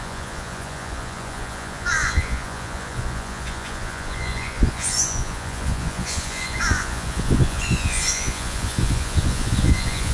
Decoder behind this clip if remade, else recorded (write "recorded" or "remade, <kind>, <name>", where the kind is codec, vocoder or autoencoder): remade, vocoder, Vocos